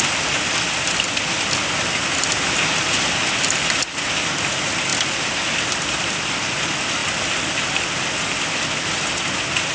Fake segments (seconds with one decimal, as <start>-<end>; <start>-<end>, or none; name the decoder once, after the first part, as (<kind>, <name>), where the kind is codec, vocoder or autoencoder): 7.0-7.8 (vocoder, BigVGAN v2)